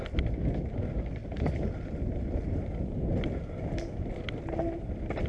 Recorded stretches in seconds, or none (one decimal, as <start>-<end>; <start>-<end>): 0.0-5.3